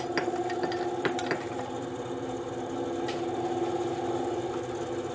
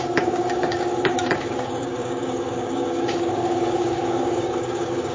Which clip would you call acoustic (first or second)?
first